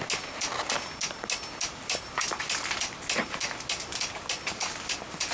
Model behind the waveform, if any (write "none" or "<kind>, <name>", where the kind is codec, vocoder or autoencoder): none